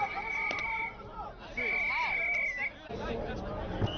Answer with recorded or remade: recorded